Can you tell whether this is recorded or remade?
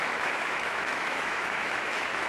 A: remade